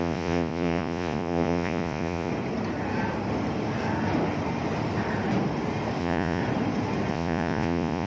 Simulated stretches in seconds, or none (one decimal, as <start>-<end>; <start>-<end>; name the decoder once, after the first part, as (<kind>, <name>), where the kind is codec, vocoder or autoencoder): 0.0-2.3 (vocoder, Vocos); 6.0-6.4; 7.1-8.1